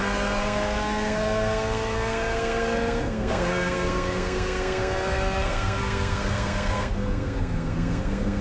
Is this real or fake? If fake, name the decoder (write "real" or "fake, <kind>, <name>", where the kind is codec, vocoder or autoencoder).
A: fake, codec, SNAC